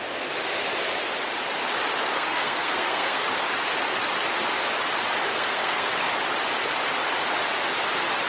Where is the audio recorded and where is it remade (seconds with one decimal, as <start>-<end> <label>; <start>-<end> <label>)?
0.0-2.1 recorded; 2.1-3.2 remade; 3.2-5.3 recorded; 5.3-5.9 remade; 5.9-8.3 recorded